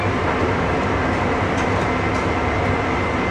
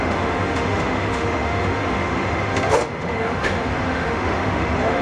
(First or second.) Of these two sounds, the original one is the first